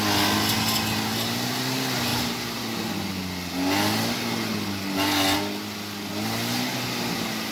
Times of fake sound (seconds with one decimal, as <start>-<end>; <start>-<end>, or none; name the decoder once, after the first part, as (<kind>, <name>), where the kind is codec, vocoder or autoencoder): 2.1-2.9 (vocoder, BigVGAN v2)